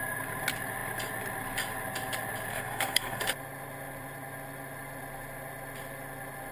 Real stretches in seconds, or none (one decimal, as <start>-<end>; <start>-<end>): 0.0-2.5; 3.2-6.5